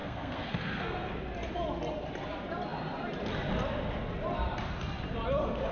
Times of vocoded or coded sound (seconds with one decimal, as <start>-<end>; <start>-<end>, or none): 0.0-1.1